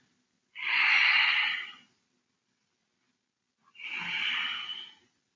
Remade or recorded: recorded